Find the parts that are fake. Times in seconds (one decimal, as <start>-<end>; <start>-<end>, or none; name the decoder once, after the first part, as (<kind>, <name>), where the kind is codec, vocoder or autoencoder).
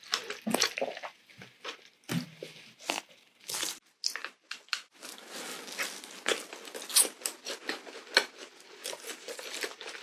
8.8-9.4 (vocoder, BigVGAN v2)